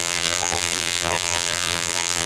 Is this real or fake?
fake